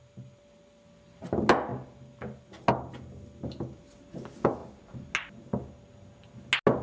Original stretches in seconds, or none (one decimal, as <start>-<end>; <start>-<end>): 0.0-6.8